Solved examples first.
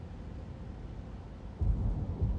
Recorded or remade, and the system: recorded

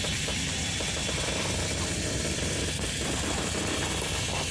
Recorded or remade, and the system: remade, vocoder, BigVGAN v2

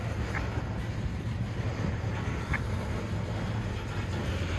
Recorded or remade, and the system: recorded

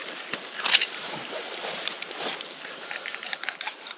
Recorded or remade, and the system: remade, vocoder, BigVGAN v2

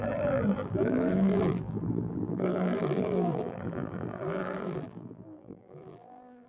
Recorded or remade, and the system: remade, vocoder, BigVGAN v2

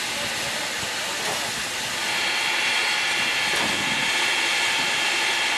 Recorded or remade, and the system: recorded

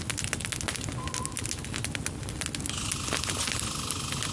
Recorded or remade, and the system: recorded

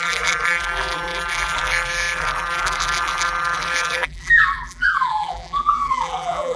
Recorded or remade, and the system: remade, vocoder, BigVGAN v2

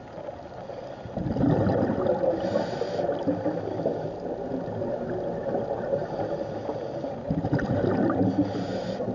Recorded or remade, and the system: recorded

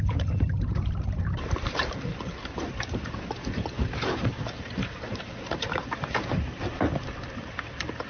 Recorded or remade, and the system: remade, vocoder, BigVGAN v2